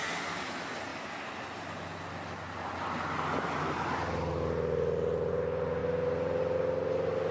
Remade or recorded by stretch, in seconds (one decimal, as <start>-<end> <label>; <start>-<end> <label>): 0.0-7.3 recorded